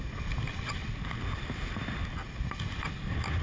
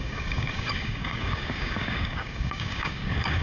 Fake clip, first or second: second